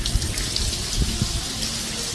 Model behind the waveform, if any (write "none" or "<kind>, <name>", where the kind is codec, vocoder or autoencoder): none